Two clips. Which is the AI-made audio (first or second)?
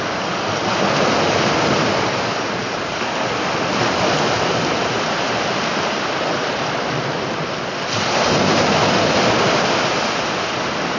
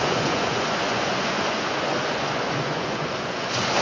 second